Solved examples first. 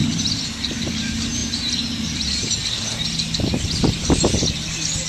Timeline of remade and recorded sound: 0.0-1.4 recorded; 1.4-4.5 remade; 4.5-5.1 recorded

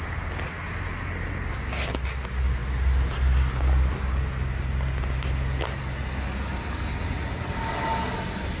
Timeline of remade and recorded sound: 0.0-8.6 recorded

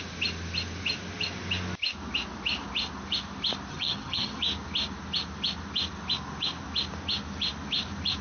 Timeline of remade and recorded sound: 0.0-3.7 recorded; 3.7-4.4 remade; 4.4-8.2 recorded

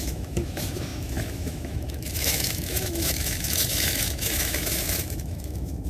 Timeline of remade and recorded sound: 0.0-5.9 remade

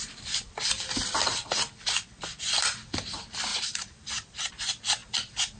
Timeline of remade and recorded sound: 0.0-3.5 recorded; 3.5-4.5 remade; 4.5-5.6 recorded

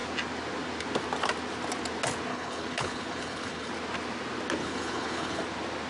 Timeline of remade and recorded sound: 0.0-2.3 recorded; 2.3-3.7 remade; 3.7-4.6 recorded; 4.6-5.4 remade; 5.4-5.9 recorded

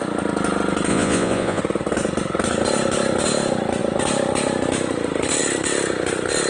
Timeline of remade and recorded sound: 0.0-0.9 recorded; 0.9-1.6 remade; 1.6-6.5 recorded